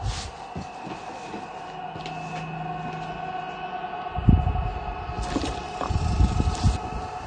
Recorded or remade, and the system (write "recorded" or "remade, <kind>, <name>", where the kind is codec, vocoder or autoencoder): recorded